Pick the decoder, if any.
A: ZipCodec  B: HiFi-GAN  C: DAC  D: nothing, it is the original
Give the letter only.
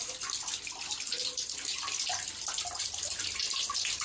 D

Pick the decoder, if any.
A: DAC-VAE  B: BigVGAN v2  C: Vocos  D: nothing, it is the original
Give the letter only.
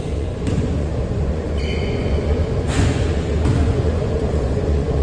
C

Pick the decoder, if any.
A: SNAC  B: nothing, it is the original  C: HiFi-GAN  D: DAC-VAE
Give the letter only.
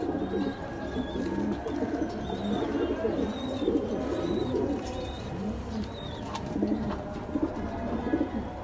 B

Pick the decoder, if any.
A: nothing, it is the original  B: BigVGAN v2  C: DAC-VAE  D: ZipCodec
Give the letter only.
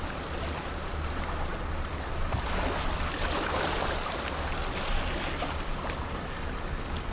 A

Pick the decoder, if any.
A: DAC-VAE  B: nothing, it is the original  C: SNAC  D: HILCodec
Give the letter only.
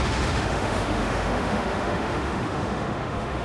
A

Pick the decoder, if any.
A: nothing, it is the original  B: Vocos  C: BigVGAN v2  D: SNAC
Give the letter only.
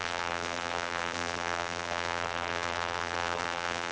C